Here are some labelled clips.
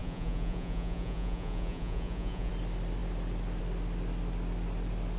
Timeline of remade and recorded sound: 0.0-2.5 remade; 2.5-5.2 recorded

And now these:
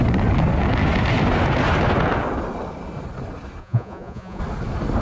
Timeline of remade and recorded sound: 0.0-3.6 recorded; 3.6-4.4 remade; 4.4-5.0 recorded

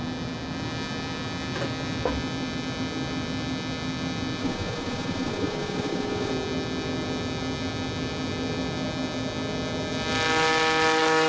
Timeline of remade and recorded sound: 0.0-4.4 recorded; 4.4-6.3 remade; 6.3-11.3 recorded

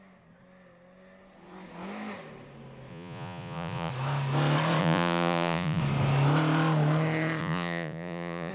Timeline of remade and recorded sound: 0.0-2.9 recorded; 2.9-3.9 remade; 3.9-4.8 recorded; 4.8-5.8 remade; 5.8-7.4 recorded; 7.4-8.5 remade

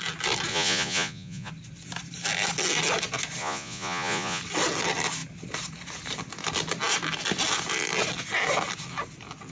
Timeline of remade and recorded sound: 0.0-0.5 recorded; 0.5-1.5 remade; 1.5-3.4 recorded; 3.4-4.4 remade; 4.4-9.5 recorded

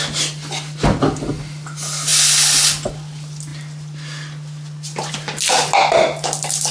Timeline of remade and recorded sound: 0.0-6.7 recorded

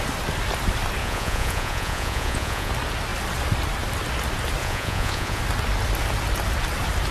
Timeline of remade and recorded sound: 0.0-1.0 recorded; 1.0-2.7 remade; 2.7-4.6 recorded; 4.6-5.4 remade; 5.4-7.1 recorded